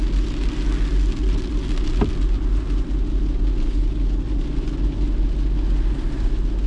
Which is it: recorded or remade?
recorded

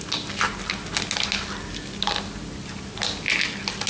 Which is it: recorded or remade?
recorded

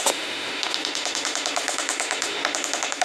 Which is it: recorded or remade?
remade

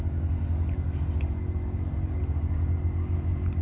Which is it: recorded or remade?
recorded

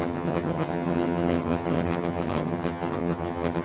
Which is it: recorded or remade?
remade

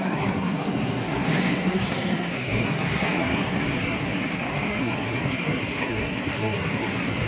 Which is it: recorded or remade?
remade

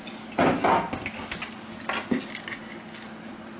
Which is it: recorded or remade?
recorded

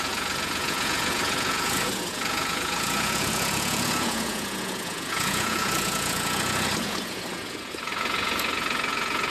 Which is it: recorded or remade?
remade